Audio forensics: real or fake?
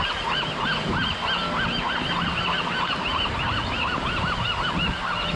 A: real